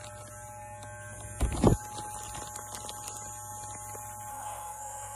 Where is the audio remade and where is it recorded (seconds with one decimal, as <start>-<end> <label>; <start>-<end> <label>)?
0.0-4.3 recorded; 4.3-5.2 remade